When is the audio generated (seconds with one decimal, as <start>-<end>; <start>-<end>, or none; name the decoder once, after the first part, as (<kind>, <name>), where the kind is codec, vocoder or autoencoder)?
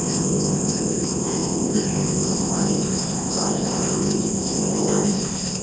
0.0-5.6 (codec, ZipCodec)